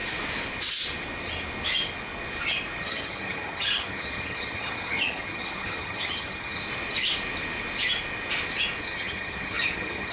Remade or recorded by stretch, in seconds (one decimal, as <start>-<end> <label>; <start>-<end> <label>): 0.0-2.8 recorded; 2.8-6.6 remade; 6.6-8.8 recorded; 8.8-10.1 remade